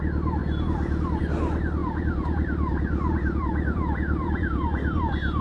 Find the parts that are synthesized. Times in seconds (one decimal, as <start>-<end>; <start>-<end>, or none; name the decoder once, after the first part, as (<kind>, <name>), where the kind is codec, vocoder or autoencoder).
1.8-5.0 (vocoder, BigVGAN v2)